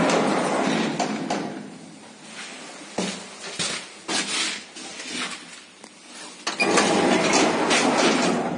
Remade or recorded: recorded